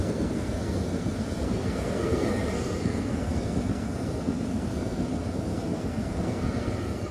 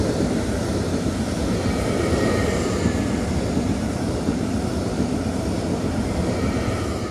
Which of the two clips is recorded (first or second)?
second